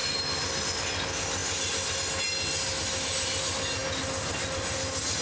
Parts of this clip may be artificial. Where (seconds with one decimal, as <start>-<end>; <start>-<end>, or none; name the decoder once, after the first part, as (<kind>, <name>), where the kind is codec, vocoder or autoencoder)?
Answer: none